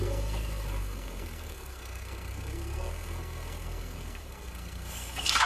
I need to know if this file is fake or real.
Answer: fake